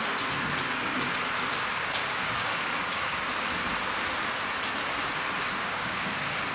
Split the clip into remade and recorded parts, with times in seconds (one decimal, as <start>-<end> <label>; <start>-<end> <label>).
0.0-2.0 recorded; 2.0-3.2 remade; 3.2-5.6 recorded; 5.6-6.5 remade